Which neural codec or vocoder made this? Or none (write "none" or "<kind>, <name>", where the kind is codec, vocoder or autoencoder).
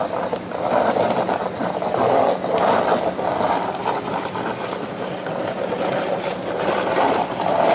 none